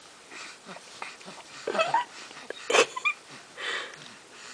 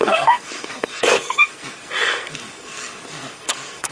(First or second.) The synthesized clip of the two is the second